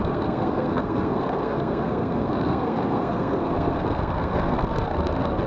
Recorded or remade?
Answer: remade